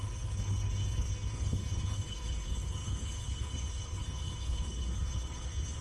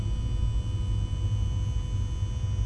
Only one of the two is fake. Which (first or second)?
first